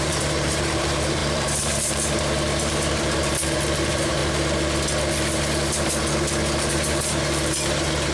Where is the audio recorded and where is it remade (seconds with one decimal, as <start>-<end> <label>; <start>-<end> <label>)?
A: 0.0-4.2 remade; 4.2-6.7 recorded; 6.7-8.1 remade